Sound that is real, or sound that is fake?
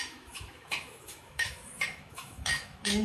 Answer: fake